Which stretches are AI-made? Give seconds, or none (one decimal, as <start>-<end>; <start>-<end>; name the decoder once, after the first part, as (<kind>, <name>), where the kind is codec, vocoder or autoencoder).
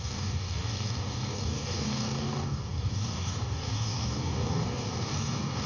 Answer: 0.0-5.7 (codec, DAC)